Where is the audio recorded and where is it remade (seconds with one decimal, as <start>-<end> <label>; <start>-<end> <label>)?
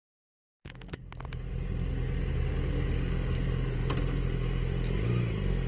0.0-1.0 remade; 1.0-5.7 recorded